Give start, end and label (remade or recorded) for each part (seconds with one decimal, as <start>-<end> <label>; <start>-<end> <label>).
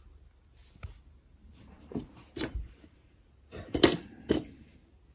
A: 0.0-0.6 recorded; 0.6-3.1 remade; 3.1-5.1 recorded